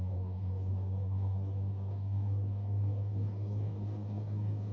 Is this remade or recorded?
remade